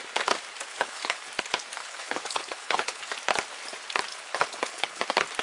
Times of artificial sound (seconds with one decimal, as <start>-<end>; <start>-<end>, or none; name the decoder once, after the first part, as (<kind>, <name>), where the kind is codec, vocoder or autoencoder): 0.7-1.3 (codec, HILCodec); 1.8-3.1; 4.1-5.0